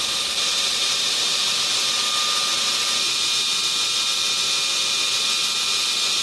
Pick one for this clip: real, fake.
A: real